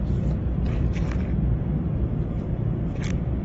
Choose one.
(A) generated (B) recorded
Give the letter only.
A